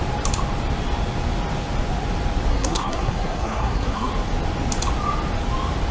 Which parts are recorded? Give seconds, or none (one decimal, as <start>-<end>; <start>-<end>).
0.0-2.5; 4.1-5.9